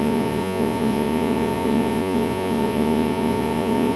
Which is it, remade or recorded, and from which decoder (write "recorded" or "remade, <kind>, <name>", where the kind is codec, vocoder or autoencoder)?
remade, vocoder, Vocos